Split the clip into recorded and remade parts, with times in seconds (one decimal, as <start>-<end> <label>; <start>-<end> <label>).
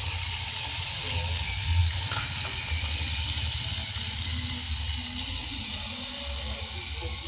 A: 0.0-7.3 recorded